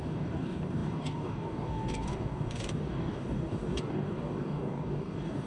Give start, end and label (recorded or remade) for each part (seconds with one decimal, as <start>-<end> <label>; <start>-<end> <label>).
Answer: 0.0-5.5 remade